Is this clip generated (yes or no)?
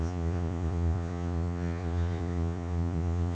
yes